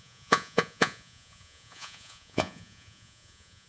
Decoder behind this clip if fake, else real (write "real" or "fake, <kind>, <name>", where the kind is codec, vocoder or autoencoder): fake, vocoder, Vocos